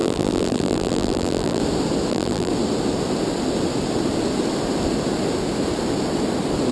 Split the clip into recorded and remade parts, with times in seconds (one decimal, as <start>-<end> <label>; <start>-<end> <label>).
0.0-1.6 remade; 1.6-2.1 recorded; 2.1-2.5 remade; 2.5-6.7 recorded